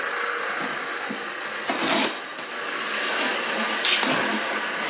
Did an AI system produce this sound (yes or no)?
no